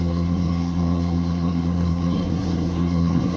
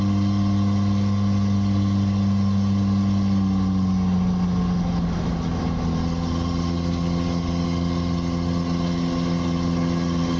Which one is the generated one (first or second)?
first